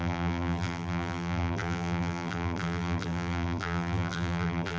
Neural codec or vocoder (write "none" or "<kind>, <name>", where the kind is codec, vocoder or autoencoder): vocoder, BigVGAN v2